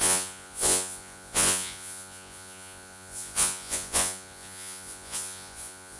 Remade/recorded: remade